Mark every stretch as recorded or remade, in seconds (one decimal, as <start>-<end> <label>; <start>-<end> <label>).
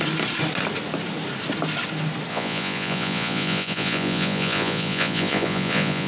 0.0-2.3 recorded; 2.3-6.1 remade